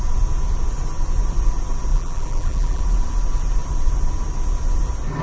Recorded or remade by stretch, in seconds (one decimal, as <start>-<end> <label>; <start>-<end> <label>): 0.0-1.9 recorded; 1.9-2.8 remade; 2.8-5.2 recorded